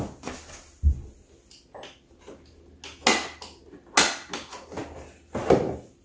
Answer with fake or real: real